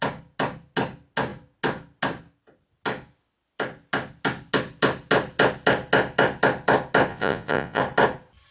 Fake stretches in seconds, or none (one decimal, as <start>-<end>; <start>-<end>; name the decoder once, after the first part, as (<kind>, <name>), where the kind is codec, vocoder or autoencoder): 7.1-7.8 (vocoder, Vocos)